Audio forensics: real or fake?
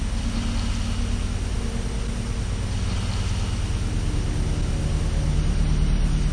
real